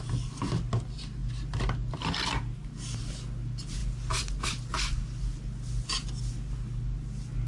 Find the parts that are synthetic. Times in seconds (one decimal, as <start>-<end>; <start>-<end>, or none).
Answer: none